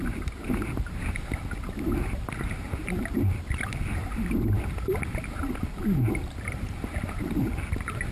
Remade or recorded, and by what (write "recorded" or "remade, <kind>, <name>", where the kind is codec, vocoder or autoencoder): recorded